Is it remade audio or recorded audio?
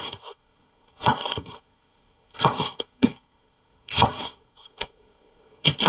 remade